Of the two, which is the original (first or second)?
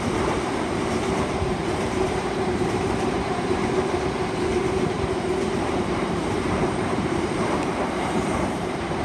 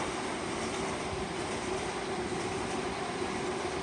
second